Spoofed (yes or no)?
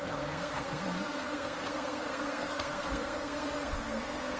yes